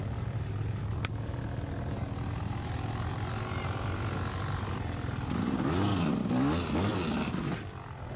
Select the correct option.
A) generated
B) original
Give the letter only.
B